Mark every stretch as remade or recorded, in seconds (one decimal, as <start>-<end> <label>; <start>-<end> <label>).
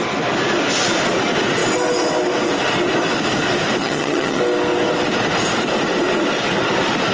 0.0-3.8 recorded; 3.8-4.4 remade; 4.4-7.1 recorded